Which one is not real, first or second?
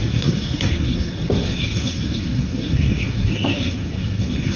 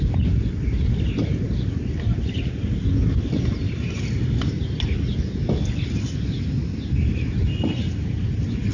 first